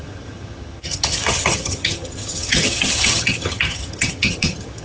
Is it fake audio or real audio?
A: fake